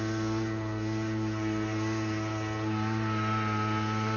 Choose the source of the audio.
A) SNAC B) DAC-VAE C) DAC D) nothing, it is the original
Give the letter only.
D